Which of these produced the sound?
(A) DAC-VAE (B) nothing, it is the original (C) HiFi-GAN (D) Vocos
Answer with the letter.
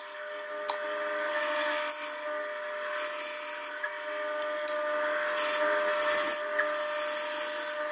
B